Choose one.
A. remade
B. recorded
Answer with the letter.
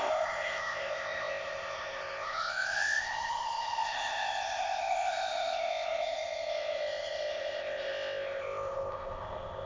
A